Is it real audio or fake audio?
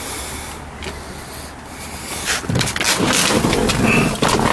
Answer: real